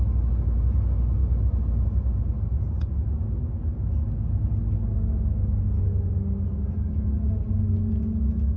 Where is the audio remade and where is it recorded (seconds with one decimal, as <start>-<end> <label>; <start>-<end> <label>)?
0.0-8.6 recorded